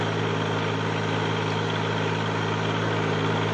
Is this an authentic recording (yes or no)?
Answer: yes